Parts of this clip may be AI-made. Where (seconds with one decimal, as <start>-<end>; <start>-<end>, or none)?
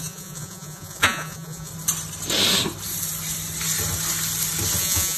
0.0-1.7; 4.8-5.2